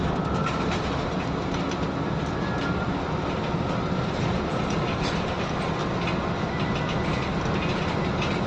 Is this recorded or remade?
recorded